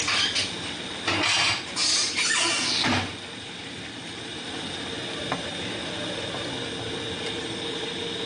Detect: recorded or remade recorded